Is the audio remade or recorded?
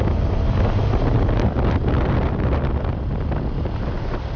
recorded